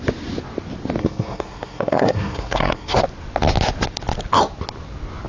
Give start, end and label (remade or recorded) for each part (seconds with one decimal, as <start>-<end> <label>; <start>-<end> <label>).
0.0-1.0 recorded; 1.0-3.0 remade; 3.0-5.3 recorded

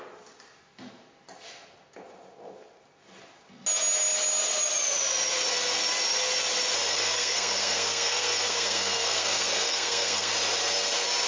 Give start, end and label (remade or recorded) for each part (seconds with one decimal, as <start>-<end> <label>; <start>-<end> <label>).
0.0-6.9 recorded; 6.9-10.3 remade; 10.3-11.3 recorded

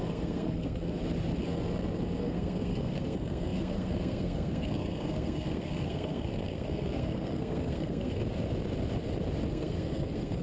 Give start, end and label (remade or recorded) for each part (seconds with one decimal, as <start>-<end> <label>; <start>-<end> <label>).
0.0-1.0 remade; 1.0-2.2 recorded; 2.2-8.2 remade; 8.2-9.5 recorded; 9.5-10.4 remade

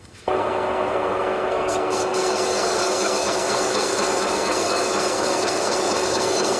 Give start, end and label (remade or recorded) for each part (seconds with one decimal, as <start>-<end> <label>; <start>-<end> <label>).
0.0-6.6 remade